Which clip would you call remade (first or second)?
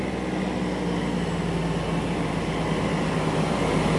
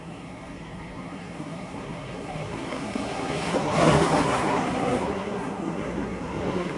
second